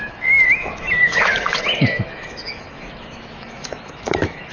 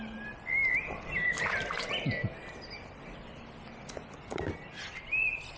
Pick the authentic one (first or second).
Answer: second